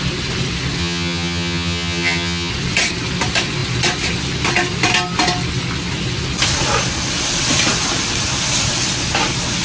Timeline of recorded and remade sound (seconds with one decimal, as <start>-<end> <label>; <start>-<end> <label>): 0.0-0.8 recorded; 0.8-2.5 remade; 2.5-9.6 recorded